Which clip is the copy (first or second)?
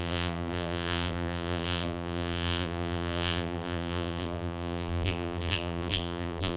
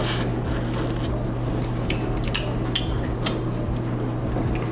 first